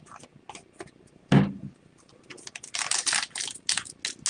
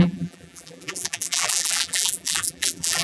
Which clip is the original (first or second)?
first